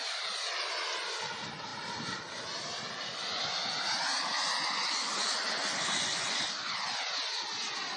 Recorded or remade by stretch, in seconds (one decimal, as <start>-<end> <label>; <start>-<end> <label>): 0.0-2.9 recorded; 2.9-3.8 remade; 3.8-4.3 recorded; 4.3-7.0 remade; 7.0-8.0 recorded